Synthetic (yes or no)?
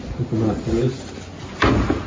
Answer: no